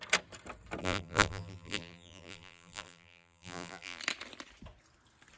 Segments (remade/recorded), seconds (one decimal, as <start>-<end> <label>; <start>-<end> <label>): 0.0-0.8 recorded; 0.8-4.0 remade; 4.0-5.4 recorded